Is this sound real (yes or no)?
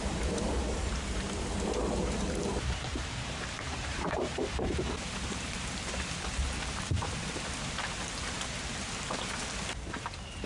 no